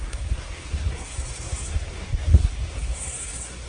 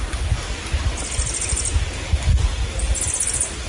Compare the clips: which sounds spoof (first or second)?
first